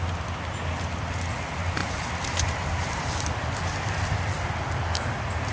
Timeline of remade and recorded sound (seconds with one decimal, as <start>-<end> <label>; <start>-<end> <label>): 0.0-5.5 recorded